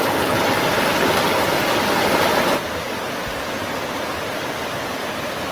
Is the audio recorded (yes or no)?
yes